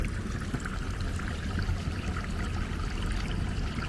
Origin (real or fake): real